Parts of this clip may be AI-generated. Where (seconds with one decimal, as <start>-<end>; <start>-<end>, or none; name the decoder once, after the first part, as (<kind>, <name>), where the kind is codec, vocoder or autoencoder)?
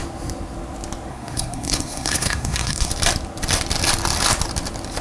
1.1-2.9 (codec, SNAC)